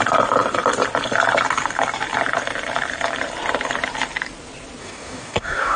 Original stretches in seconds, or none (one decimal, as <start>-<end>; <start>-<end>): 0.0-4.8